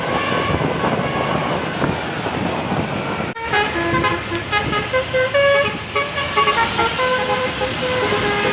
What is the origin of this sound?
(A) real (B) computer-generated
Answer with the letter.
A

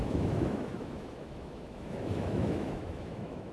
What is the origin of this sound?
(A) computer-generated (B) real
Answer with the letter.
A